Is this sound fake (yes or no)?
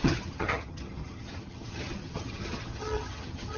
yes